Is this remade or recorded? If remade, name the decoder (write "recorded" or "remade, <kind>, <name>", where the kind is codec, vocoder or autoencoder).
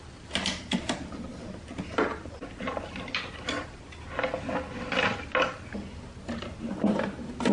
recorded